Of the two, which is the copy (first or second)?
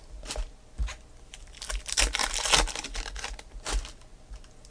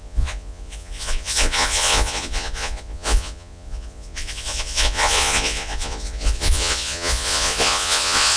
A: second